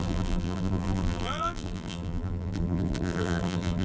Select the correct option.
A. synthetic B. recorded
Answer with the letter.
A